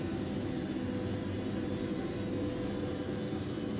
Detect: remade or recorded recorded